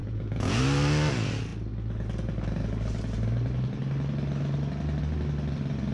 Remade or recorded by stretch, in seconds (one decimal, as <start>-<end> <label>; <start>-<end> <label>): 0.0-0.6 remade; 0.6-5.9 recorded